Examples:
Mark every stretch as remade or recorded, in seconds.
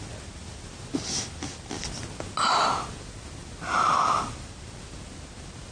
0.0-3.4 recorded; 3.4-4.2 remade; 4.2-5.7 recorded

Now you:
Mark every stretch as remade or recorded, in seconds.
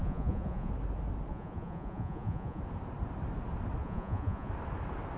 0.0-0.7 remade; 0.7-1.3 recorded; 1.3-2.6 remade; 2.6-3.8 recorded; 3.8-4.5 remade; 4.5-5.2 recorded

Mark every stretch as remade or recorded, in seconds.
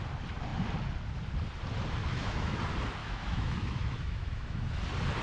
0.0-2.0 recorded; 2.0-2.6 remade; 2.6-3.0 recorded; 3.0-4.8 remade; 4.8-5.2 recorded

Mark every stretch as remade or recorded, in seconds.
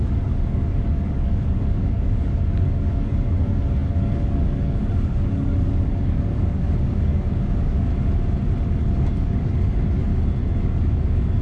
0.0-7.9 remade; 7.9-8.8 recorded; 8.8-10.1 remade; 10.1-10.6 recorded; 10.6-11.4 remade